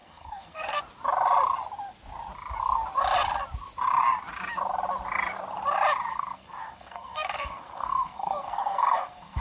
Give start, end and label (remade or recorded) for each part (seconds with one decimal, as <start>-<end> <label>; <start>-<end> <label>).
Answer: 0.0-0.8 remade; 0.8-6.1 recorded; 6.1-9.4 remade